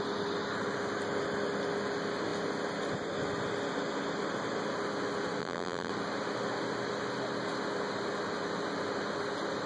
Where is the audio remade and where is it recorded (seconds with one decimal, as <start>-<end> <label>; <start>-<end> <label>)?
0.0-5.4 recorded; 5.4-5.9 remade; 5.9-9.7 recorded